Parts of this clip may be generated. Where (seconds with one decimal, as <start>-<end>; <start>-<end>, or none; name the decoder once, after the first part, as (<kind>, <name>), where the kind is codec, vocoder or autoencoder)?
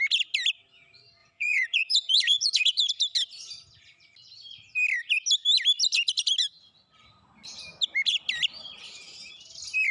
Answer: 1.2-2.9 (vocoder, Vocos)